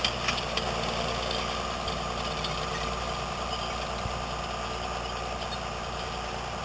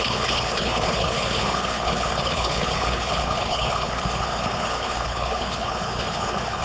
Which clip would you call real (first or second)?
first